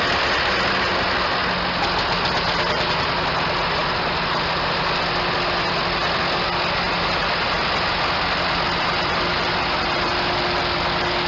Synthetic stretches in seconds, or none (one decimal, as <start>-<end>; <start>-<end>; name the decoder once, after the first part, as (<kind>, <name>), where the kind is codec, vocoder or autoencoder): none